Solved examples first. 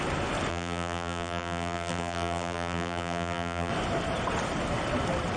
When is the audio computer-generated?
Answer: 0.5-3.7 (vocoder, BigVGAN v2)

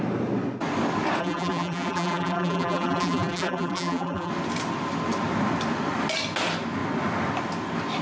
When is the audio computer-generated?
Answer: 1.2-4.3 (vocoder, BigVGAN v2)

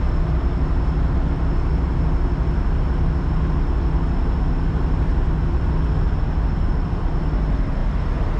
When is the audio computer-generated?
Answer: none

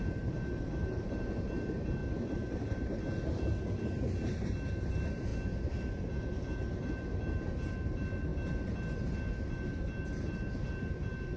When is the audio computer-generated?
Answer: 0.0-11.4 (vocoder, BigVGAN v2)

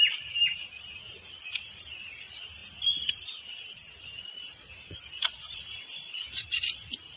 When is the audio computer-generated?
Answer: 0.0-2.6 (vocoder, BigVGAN v2); 3.1-7.2